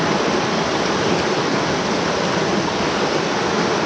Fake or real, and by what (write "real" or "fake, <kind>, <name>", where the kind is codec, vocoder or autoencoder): real